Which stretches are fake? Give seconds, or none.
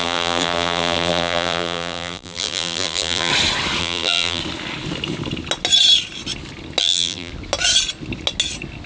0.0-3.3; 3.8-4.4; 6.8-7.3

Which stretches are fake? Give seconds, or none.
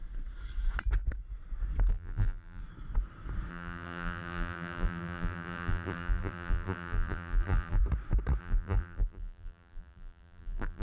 1.9-2.6; 3.5-7.8; 8.4-10.8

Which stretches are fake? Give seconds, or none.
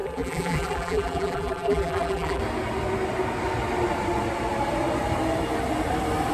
0.0-2.4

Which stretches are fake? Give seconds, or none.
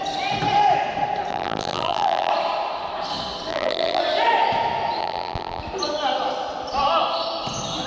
1.3-2.3; 3.5-4.0; 5.0-5.6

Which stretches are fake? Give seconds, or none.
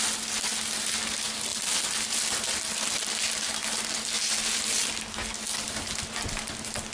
1.5-2.5